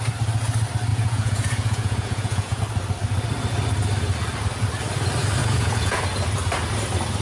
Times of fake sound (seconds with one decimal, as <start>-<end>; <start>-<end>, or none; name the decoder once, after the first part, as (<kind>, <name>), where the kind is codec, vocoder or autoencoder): 0.9-2.6 (vocoder, Vocos); 5.4-6.0